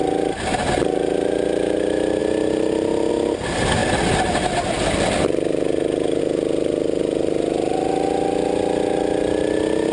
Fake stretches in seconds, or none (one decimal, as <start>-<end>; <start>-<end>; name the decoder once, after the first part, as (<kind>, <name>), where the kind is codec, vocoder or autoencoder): none